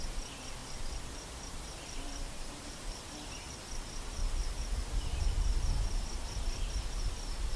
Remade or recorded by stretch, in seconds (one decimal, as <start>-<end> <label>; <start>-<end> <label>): 0.0-0.6 recorded; 0.6-3.5 remade; 3.5-7.6 recorded